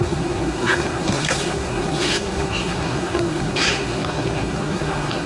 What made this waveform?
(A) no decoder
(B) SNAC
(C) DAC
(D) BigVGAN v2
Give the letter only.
B